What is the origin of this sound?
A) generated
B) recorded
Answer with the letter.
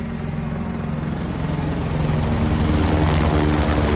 B